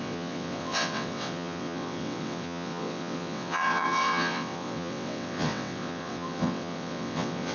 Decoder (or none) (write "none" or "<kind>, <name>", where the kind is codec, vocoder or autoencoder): vocoder, WaveNeXt